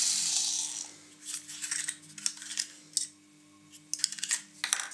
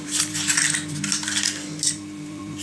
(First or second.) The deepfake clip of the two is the second